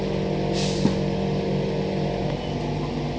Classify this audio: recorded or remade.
recorded